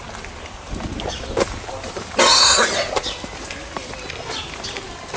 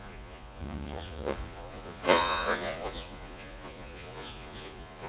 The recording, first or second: first